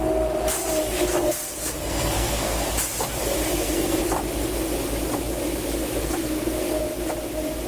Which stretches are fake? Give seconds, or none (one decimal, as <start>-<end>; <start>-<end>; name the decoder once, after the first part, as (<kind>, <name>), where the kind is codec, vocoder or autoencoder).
1.1-2.7 (codec, SNAC); 3.5-4.0; 6.0-6.8